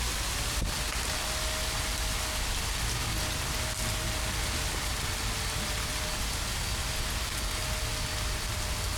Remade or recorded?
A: recorded